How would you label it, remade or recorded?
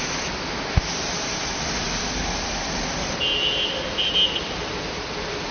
recorded